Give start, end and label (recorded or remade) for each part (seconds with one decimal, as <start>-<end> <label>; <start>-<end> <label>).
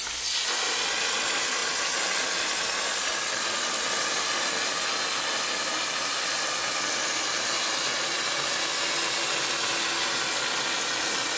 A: 0.0-11.4 recorded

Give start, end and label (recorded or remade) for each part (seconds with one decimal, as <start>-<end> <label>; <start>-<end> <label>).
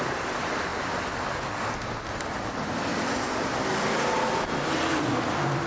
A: 0.0-0.7 remade; 0.7-2.1 recorded; 2.1-5.7 remade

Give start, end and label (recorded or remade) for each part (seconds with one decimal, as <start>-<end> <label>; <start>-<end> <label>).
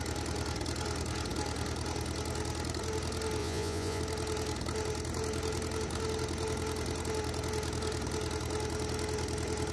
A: 0.0-3.4 recorded; 3.4-4.0 remade; 4.0-9.7 recorded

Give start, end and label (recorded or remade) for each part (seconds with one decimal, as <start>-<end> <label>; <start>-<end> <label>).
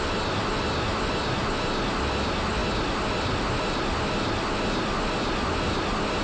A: 0.0-6.2 recorded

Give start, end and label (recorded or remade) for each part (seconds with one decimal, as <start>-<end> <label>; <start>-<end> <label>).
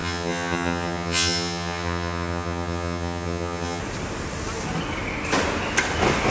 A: 0.0-3.8 remade; 3.8-6.3 recorded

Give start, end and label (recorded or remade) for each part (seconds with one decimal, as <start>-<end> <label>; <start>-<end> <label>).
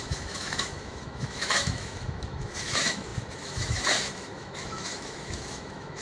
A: 0.0-6.0 remade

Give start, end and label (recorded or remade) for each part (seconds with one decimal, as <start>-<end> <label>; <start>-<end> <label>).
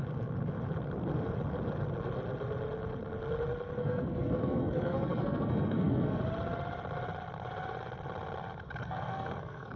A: 0.0-3.8 recorded; 3.8-6.2 remade; 6.2-8.8 recorded; 8.8-9.8 remade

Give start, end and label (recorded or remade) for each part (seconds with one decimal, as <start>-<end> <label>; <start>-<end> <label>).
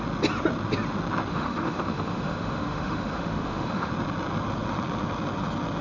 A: 0.0-1.3 recorded; 1.3-3.9 remade; 3.9-5.8 recorded